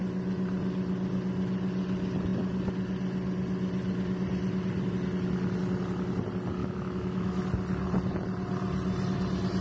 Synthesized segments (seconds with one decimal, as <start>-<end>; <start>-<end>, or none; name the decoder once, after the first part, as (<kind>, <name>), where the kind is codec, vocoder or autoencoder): 6.6-7.4 (autoencoder, DAC-VAE)